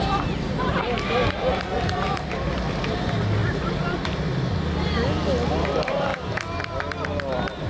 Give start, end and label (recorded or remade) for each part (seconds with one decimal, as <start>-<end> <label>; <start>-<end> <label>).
0.0-7.7 remade